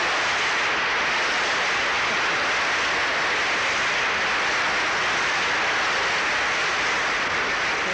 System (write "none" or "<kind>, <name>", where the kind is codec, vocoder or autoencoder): none